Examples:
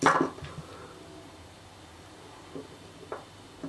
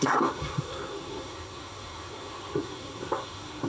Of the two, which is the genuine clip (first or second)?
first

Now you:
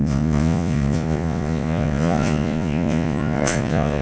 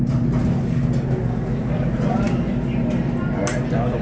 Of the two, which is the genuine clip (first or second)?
second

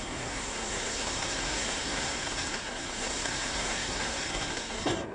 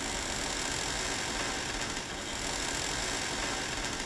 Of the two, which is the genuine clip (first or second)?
second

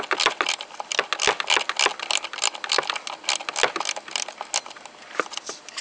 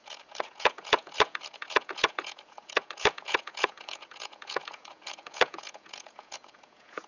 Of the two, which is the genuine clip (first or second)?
first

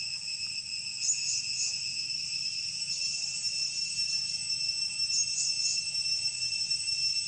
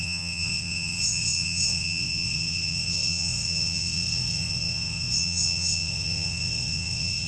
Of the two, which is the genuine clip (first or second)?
first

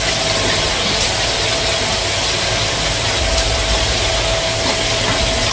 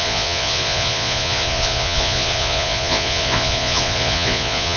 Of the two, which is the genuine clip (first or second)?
first